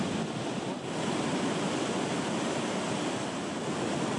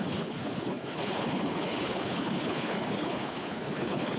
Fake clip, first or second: second